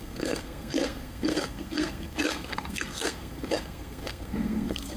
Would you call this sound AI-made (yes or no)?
yes